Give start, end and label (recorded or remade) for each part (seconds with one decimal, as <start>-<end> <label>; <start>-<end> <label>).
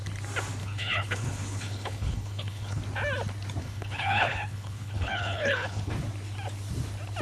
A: 0.0-0.6 recorded; 0.6-2.8 remade; 2.8-3.6 recorded; 3.6-5.9 remade; 5.9-7.2 recorded